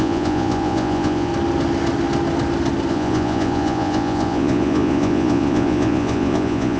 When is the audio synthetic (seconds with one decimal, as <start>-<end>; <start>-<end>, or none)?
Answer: 0.0-1.3; 2.9-6.8